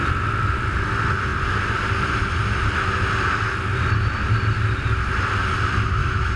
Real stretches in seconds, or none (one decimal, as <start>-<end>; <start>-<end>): 0.0-6.4